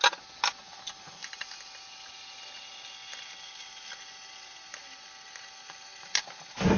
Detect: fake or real real